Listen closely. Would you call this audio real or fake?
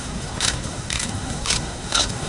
fake